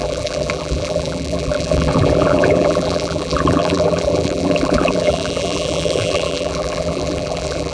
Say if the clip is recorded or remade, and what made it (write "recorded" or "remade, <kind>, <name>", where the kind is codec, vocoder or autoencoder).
remade, vocoder, BigVGAN v2